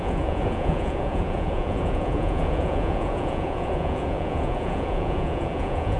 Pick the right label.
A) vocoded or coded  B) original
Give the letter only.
A